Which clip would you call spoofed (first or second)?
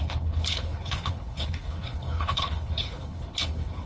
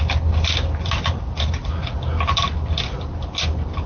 first